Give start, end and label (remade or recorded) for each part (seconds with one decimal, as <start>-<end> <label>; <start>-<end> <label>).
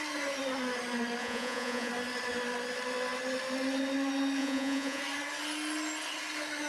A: 0.0-1.2 recorded; 1.2-1.9 remade; 1.9-4.4 recorded; 4.4-5.0 remade; 5.0-6.7 recorded